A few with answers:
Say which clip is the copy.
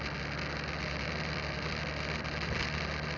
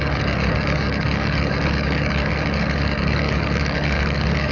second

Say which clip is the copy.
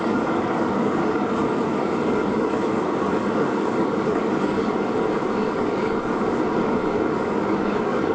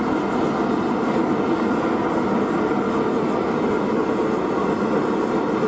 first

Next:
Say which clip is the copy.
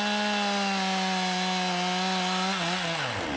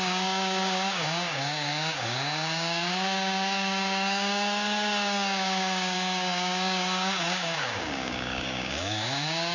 second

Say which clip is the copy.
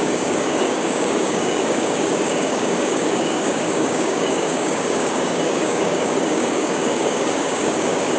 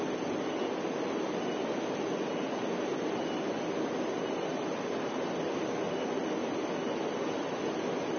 first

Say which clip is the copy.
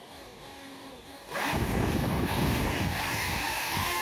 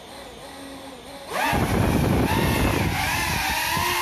first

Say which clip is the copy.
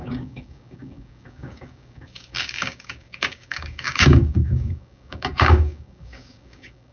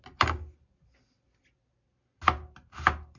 first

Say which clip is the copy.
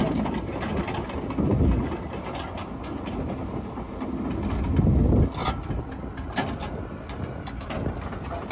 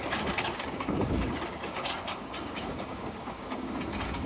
second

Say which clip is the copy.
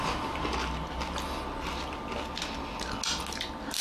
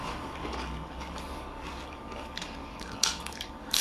second